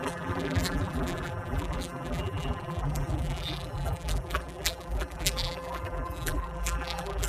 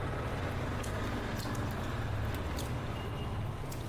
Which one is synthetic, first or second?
first